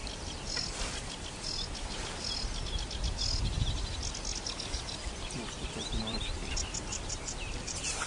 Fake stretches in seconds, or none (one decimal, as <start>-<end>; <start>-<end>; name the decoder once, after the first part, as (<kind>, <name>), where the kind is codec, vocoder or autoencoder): 5.0-6.5 (vocoder, BigVGAN v2); 6.9-8.1